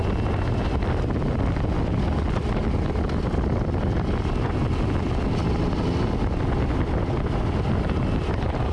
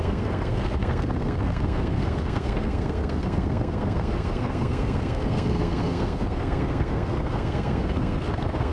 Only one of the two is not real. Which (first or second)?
second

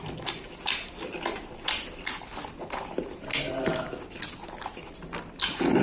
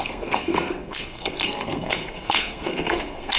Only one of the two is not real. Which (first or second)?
second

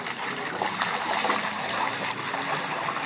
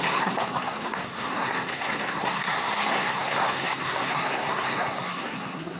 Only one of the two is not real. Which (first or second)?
second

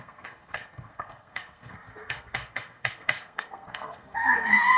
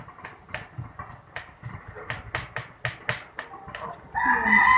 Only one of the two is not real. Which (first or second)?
first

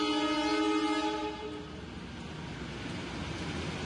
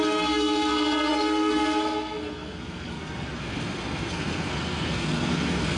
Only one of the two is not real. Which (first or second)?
second